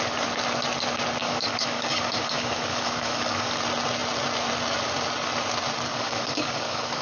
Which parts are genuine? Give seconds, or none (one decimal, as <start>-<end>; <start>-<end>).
0.0-1.2; 3.6-5.9